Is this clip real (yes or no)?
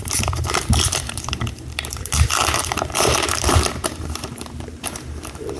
no